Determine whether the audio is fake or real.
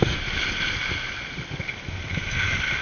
real